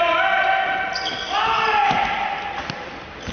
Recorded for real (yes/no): yes